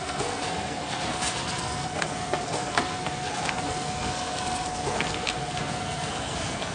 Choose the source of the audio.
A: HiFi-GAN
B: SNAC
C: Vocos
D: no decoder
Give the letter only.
B